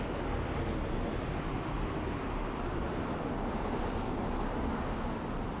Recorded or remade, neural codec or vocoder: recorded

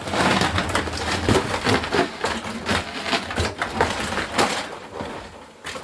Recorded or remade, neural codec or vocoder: recorded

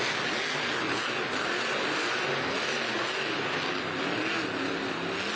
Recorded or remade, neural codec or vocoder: recorded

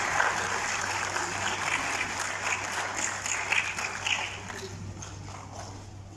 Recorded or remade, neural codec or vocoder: recorded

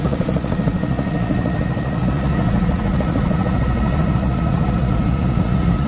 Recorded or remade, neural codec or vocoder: remade, vocoder, Vocos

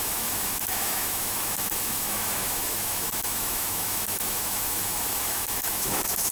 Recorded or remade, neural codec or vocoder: remade, autoencoder, DAC-VAE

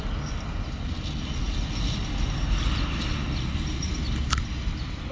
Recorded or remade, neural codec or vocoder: recorded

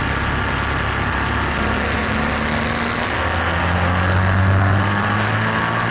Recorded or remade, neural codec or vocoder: recorded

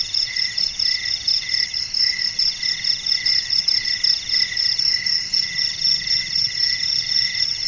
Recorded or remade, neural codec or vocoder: recorded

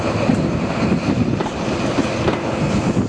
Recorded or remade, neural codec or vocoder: recorded